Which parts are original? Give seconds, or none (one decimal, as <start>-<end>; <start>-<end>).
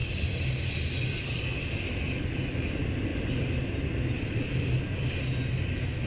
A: 1.4-3.1; 5.1-6.1